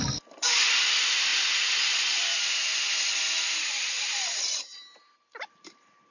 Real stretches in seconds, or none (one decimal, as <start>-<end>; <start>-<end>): none